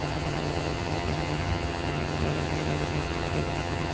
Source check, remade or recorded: remade